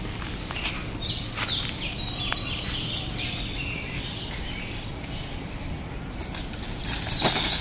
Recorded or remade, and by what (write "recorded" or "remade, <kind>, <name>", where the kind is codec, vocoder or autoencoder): recorded